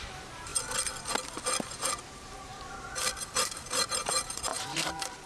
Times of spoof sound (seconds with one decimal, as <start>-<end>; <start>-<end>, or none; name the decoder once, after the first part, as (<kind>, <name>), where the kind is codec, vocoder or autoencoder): 0.0-0.5 (vocoder, BigVGAN v2); 2.0-2.5; 3.2-5.3